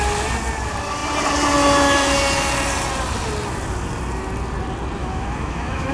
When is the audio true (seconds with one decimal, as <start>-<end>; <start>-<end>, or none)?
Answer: 0.0-5.0